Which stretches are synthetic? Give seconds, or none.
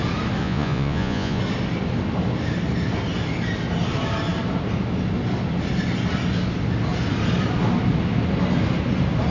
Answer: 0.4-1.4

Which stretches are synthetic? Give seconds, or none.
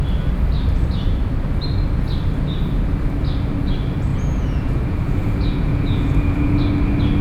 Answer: 4.1-6.6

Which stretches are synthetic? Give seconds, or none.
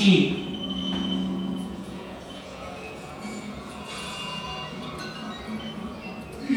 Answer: 0.8-4.8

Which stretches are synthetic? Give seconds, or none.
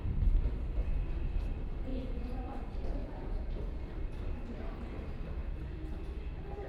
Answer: 1.9-2.4; 3.0-3.8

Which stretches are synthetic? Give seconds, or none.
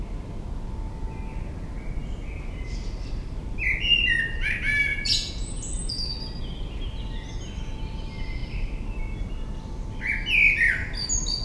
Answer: 4.9-6.1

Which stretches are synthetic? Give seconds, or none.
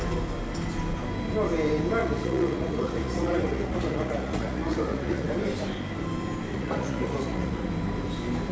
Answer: 2.0-5.3; 6.5-7.7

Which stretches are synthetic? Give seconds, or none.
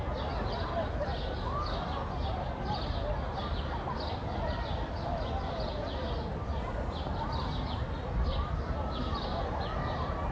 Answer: none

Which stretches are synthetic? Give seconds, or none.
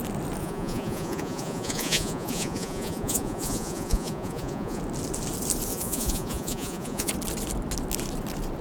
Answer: 0.4-4.8; 5.7-7.1